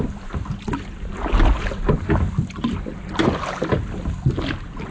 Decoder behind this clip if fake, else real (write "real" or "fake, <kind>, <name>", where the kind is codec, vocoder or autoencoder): real